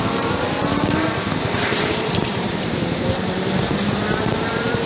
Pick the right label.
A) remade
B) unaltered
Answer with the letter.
A